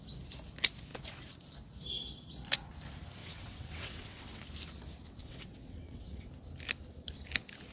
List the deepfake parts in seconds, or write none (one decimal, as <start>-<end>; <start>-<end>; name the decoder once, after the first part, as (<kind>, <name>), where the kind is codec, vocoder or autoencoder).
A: 3.2-4.4 (vocoder, WaveNeXt); 5.2-6.3